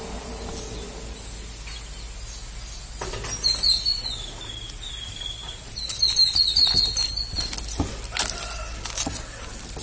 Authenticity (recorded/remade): recorded